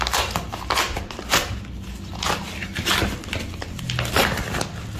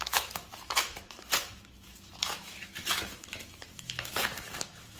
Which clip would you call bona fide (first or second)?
first